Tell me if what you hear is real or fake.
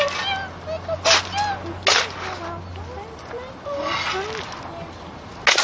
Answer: real